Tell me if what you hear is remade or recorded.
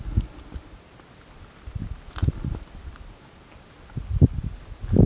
recorded